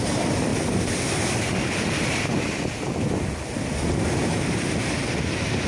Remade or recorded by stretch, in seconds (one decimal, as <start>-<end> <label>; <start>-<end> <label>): 0.0-5.7 recorded